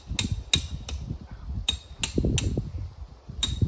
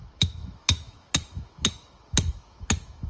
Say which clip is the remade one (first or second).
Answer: second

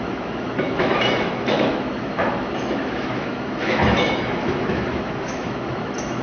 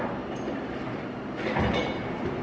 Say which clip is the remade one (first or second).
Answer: first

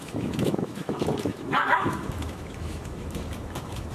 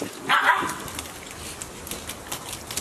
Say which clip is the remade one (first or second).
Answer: first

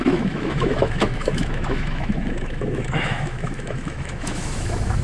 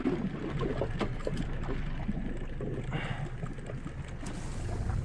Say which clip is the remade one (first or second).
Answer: first